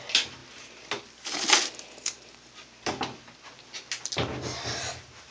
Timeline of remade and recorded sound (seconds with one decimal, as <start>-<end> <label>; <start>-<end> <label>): 0.0-5.3 recorded